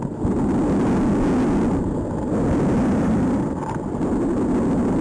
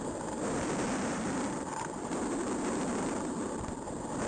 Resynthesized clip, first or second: second